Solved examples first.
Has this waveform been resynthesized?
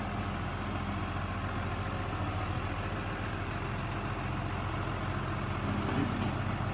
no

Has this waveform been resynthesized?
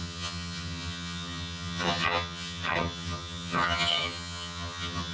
yes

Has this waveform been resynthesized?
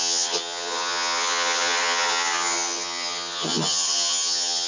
yes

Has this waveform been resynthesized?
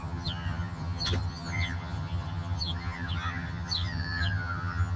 yes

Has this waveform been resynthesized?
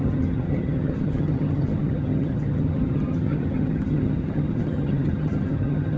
yes